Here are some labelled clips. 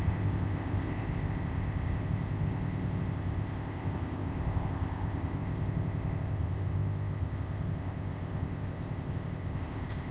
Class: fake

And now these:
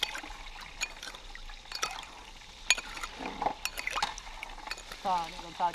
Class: real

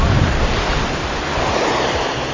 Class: real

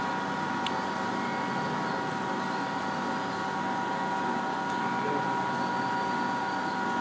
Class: real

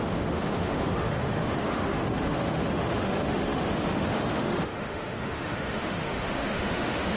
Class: fake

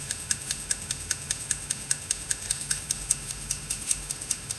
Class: fake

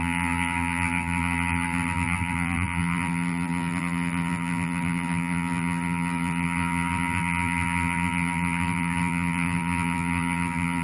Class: fake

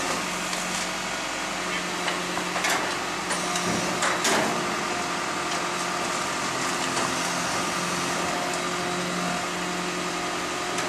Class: real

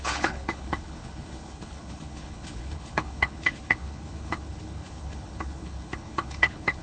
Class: fake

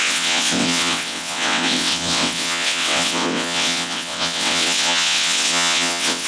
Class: fake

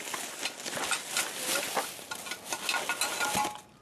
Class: real